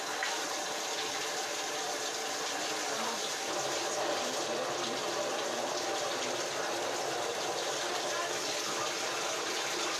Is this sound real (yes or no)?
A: yes